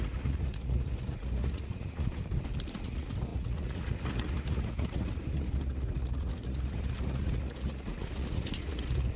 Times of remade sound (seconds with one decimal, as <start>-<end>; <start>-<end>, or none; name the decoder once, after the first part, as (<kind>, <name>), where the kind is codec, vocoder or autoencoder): 0.0-2.2 (vocoder, Vocos); 2.7-9.2